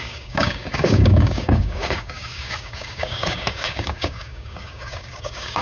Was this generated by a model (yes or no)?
yes